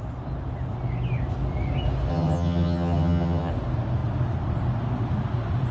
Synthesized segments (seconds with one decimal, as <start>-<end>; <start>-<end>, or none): 2.1-3.5